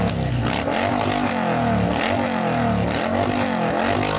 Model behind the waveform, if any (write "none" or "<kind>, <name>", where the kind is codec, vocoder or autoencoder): none